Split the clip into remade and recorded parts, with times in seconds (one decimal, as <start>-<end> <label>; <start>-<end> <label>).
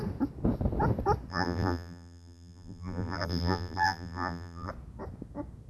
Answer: 0.0-1.3 recorded; 1.3-4.7 remade; 4.7-5.7 recorded